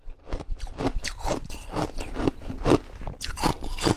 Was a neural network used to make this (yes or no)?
yes